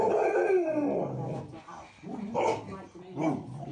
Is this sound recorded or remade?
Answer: recorded